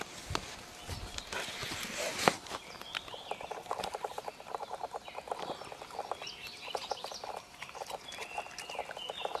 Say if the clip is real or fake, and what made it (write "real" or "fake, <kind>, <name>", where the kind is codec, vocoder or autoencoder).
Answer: real